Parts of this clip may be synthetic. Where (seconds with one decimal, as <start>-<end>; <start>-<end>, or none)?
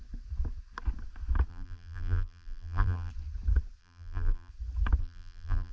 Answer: 1.5-3.1; 3.8-4.5; 5.0-5.7